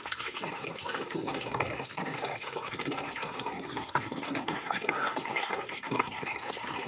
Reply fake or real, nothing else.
fake